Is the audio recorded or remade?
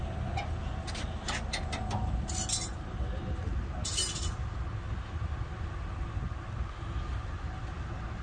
recorded